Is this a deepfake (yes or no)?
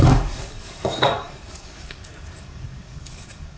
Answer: yes